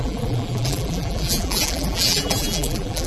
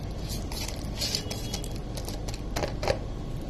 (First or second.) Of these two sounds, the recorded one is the second